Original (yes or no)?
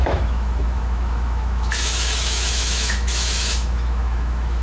no